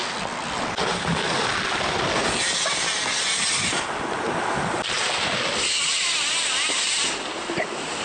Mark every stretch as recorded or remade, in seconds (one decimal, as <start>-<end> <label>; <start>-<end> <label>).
0.0-8.0 recorded